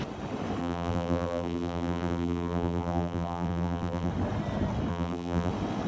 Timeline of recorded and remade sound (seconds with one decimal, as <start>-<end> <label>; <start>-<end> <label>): 0.0-0.6 recorded; 0.6-4.1 remade; 4.1-4.9 recorded; 4.9-5.5 remade; 5.5-5.9 recorded